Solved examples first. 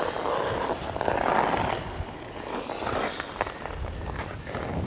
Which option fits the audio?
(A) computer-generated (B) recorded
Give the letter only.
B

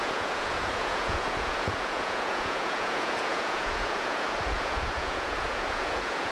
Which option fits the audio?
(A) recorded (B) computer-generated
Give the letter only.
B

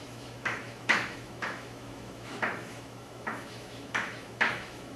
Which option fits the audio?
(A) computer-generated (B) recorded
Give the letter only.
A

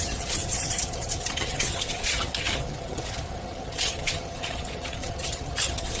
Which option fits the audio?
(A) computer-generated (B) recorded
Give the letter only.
A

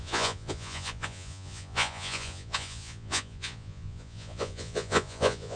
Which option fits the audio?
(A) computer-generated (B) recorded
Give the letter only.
A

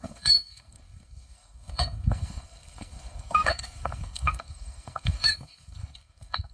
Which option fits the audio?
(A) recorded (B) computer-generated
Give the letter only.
B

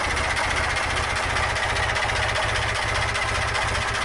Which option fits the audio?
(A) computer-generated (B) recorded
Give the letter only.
B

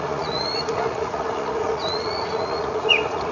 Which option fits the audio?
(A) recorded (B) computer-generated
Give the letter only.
B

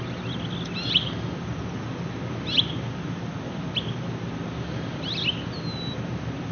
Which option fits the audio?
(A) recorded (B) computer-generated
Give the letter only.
A